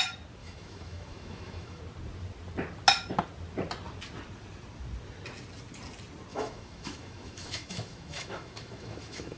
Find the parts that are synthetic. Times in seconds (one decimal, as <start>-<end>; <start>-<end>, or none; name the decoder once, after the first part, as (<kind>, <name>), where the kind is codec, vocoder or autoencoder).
0.4-1.8 (autoencoder, DAC-VAE); 6.3-9.4